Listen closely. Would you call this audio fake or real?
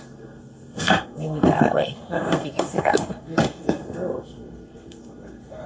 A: fake